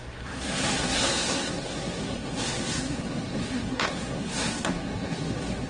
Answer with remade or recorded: remade